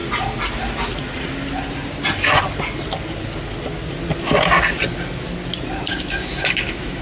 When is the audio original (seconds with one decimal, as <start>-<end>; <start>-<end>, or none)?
0.0-5.9